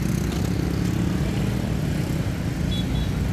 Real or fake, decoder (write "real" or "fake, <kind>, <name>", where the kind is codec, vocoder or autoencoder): real